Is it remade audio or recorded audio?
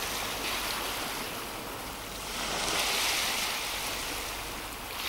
recorded